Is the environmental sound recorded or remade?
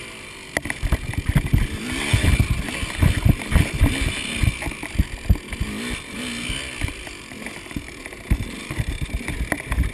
recorded